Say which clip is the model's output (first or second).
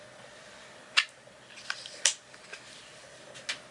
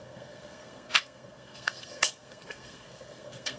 second